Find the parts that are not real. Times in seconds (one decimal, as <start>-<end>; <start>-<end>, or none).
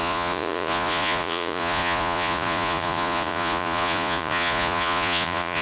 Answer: 0.0-5.6